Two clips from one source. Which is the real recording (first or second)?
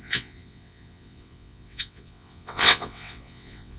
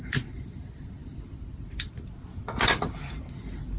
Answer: second